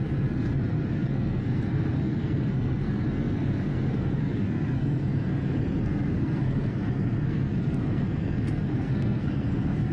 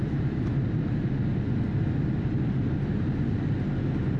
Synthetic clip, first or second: first